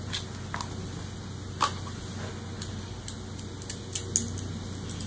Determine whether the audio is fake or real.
real